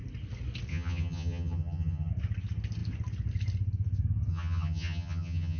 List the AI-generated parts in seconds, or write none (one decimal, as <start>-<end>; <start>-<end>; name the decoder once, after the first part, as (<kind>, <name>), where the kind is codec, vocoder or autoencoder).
0.7-2.1 (vocoder, HiFi-GAN); 4.3-5.6